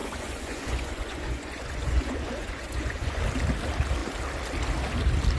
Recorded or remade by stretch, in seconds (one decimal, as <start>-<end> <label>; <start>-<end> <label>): 0.0-3.2 remade; 3.2-5.4 recorded